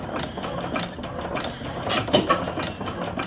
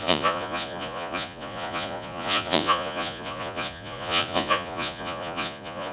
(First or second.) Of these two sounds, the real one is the first